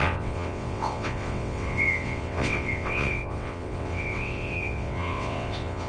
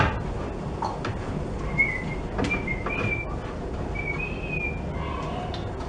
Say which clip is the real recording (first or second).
second